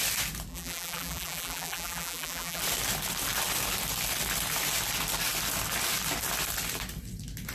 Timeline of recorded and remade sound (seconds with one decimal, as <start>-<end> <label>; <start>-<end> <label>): 0.0-0.5 recorded; 0.5-2.6 remade; 2.6-7.5 recorded